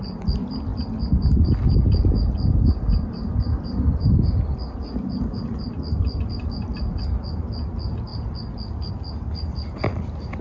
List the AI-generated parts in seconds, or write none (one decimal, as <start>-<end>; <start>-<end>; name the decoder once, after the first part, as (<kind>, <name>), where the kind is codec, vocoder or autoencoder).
none